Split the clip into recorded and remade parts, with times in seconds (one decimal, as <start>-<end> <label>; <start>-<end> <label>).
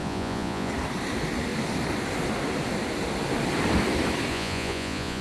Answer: 0.0-0.7 remade; 0.7-4.3 recorded; 4.3-5.2 remade